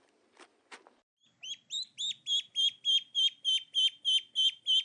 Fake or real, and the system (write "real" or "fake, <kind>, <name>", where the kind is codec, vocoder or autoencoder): real